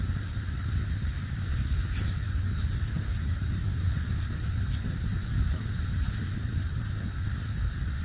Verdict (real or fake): real